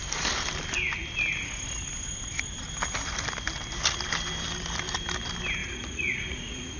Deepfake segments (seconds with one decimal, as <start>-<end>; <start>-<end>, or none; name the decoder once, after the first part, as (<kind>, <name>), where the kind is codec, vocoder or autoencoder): 5.6-6.8 (vocoder, Vocos)